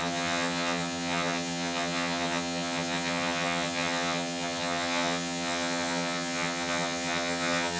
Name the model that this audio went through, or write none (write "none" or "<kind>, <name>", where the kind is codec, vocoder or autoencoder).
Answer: vocoder, HiFi-GAN